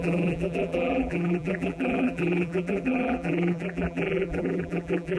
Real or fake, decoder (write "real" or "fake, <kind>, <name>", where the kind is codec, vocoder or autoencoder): fake, vocoder, BigVGAN v2